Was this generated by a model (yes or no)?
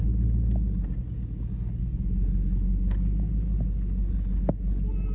no